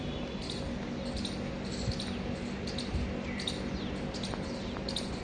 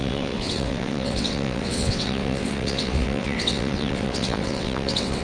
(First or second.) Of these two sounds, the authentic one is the first